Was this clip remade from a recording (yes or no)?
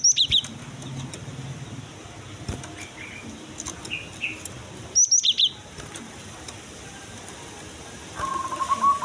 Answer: no